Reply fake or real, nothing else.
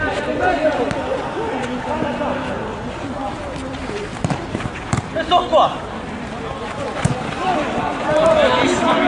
real